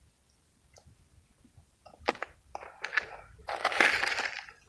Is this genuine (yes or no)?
yes